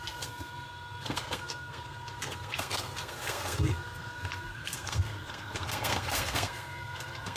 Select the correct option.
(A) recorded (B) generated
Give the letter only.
B